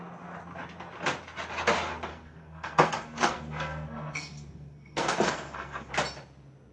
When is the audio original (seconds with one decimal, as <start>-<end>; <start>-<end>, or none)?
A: 0.0-2.1; 5.9-6.7